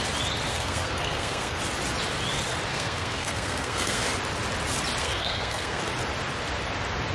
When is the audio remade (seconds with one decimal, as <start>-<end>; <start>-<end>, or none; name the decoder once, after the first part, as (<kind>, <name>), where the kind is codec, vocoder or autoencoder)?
0.5-1.6 (codec, SNAC); 2.7-4.0; 5.0-5.8